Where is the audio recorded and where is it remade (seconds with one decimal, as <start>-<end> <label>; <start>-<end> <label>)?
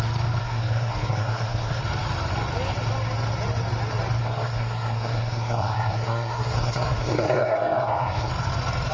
0.0-0.4 recorded; 0.4-1.8 remade; 1.8-4.2 recorded; 4.2-8.3 remade; 8.3-8.9 recorded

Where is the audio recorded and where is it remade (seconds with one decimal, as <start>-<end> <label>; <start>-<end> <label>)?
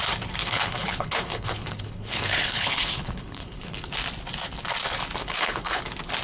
0.0-0.4 recorded; 0.4-3.9 remade; 3.9-5.2 recorded; 5.2-5.8 remade; 5.8-6.2 recorded